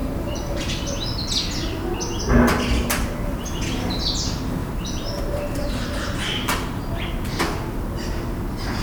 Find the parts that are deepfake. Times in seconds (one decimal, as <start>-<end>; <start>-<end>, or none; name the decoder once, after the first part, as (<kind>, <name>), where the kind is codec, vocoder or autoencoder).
0.0-0.6 (vocoder, BigVGAN v2); 4.6-6.8